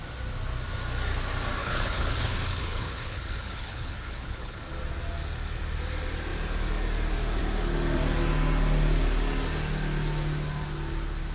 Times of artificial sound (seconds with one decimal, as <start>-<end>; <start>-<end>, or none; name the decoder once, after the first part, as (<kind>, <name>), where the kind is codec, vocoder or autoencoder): 1.6-4.6 (codec, HILCodec)